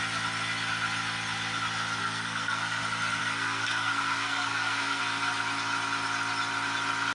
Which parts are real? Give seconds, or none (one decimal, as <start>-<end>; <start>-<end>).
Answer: 0.0-2.0; 2.8-3.2; 5.0-7.1